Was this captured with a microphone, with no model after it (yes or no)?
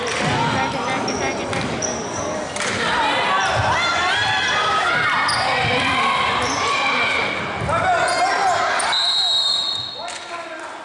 yes